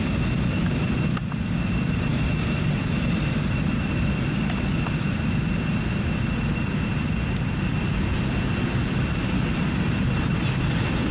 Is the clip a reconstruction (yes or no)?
no